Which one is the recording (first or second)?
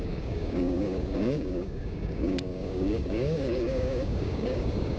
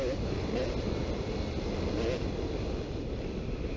second